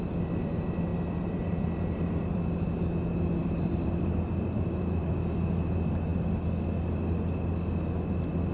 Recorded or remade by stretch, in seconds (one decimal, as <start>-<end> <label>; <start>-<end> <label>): 0.0-0.9 recorded; 0.9-2.4 remade; 2.4-3.4 recorded; 3.4-5.2 remade; 5.2-8.5 recorded